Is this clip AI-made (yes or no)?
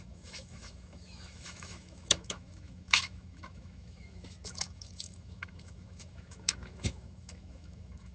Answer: yes